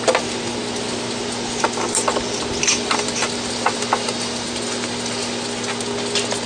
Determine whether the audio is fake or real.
real